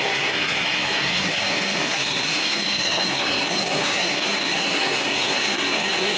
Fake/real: fake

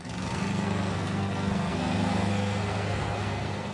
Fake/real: fake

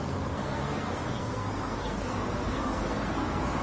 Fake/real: fake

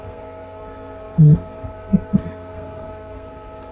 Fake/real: fake